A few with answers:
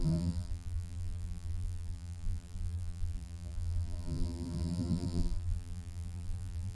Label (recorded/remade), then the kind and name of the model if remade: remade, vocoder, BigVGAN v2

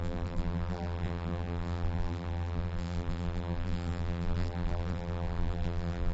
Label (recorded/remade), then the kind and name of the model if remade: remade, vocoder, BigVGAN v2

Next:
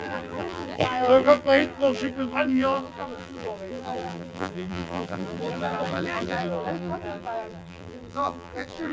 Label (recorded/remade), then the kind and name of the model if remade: remade, vocoder, BigVGAN v2